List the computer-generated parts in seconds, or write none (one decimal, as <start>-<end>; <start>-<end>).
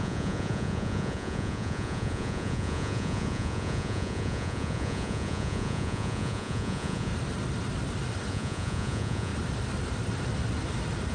0.0-7.1; 8.3-9.3